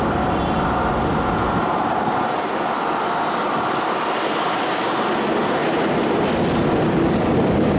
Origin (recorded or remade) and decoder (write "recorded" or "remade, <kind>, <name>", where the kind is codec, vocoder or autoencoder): recorded